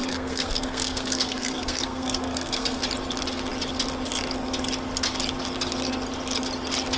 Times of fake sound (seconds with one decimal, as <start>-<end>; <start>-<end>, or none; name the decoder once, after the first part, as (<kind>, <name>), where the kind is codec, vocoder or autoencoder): 0.0-2.8 (codec, SNAC)